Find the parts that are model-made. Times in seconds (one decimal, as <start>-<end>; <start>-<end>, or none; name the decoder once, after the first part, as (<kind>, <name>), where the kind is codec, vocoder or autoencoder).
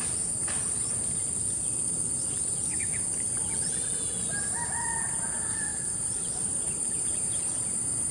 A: 5.7-7.4 (vocoder, BigVGAN v2)